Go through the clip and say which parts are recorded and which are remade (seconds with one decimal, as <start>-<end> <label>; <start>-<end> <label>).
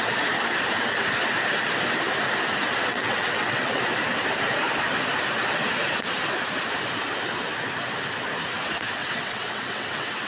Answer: 0.0-2.9 recorded; 2.9-3.8 remade; 3.8-9.0 recorded; 9.0-10.3 remade